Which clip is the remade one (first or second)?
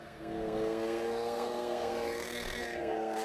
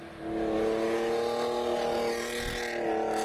first